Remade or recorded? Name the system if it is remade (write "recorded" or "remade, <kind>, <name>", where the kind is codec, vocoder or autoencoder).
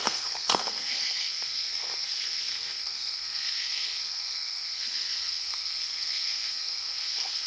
remade, codec, SNAC